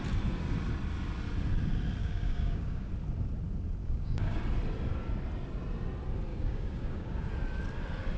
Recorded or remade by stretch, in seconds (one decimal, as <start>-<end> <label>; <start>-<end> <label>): 0.0-2.0 recorded; 2.0-2.9 remade; 2.9-3.8 recorded; 3.8-4.4 remade; 4.4-6.3 recorded; 6.3-7.3 remade; 7.3-8.2 recorded